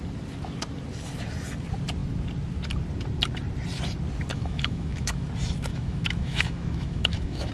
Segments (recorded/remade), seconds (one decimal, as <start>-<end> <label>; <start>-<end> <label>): 0.0-4.3 recorded; 4.3-5.3 remade; 5.3-5.7 recorded; 5.7-7.5 remade